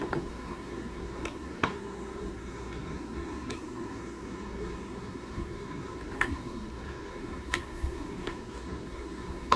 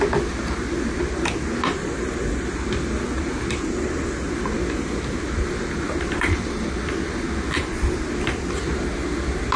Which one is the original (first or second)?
second